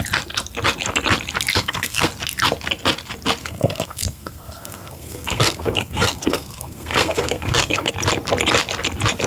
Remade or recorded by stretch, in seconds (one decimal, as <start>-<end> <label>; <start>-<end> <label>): 0.0-1.5 recorded; 1.5-2.1 remade; 2.1-3.4 recorded; 3.4-7.9 remade; 7.9-9.3 recorded